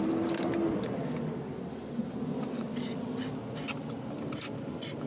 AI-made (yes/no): no